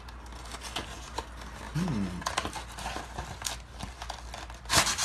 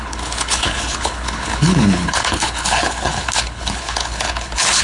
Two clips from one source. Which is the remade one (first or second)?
second